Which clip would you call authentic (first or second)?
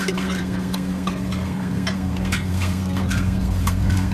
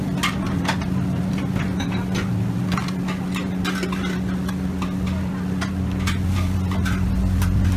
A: second